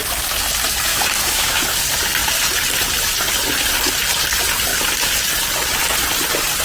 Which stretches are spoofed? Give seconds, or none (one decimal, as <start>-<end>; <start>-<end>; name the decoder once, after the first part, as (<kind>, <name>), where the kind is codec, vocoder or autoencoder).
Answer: 0.9-1.6 (autoencoder, DAC-VAE)